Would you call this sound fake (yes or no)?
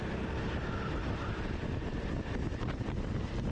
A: no